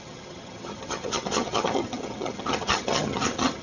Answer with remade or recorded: remade